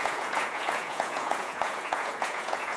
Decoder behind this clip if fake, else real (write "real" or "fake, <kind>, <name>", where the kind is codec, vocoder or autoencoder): fake, vocoder, Vocos